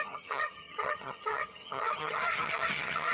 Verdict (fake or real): fake